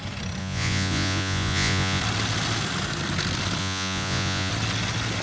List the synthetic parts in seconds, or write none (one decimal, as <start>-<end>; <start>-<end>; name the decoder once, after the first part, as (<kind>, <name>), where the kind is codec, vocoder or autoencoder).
0.4-2.0 (vocoder, Vocos); 3.6-4.5

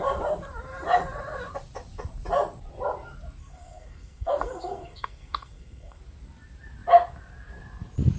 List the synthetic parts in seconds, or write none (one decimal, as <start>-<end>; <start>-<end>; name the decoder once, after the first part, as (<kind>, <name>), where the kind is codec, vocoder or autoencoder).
3.4-6.0 (codec, SNAC)